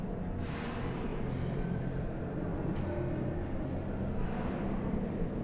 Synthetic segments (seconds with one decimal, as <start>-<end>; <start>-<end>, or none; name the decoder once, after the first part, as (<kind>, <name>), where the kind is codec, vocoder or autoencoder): 1.1-1.8 (vocoder, BigVGAN v2)